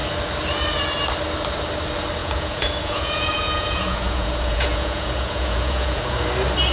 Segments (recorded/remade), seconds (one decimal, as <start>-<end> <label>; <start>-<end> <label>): 0.0-2.2 recorded; 2.2-6.2 remade; 6.2-6.7 recorded

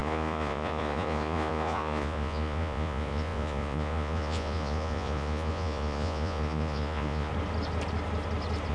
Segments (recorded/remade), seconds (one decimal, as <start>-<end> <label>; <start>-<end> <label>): 0.0-7.3 remade; 7.3-8.7 recorded

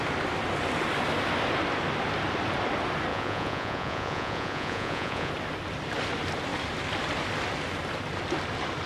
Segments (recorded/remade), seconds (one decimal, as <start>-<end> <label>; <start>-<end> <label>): 0.0-3.1 recorded; 3.1-5.3 remade; 5.3-8.9 recorded

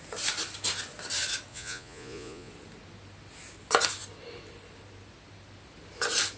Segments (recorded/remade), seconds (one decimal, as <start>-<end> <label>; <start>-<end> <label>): 0.0-1.5 recorded; 1.5-2.5 remade; 2.5-6.4 recorded

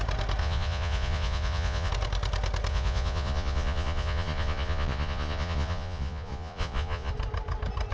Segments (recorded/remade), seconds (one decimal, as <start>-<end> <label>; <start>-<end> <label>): 0.0-0.4 recorded; 0.4-1.9 remade; 1.9-2.7 recorded; 2.7-7.1 remade; 7.1-7.9 recorded

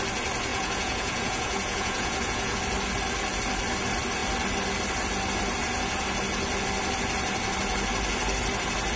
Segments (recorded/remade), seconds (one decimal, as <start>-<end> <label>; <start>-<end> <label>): 0.0-0.5 recorded; 0.5-2.6 remade; 2.6-9.0 recorded